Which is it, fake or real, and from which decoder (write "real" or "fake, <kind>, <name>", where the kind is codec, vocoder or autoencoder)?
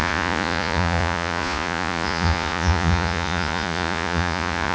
fake, vocoder, Vocos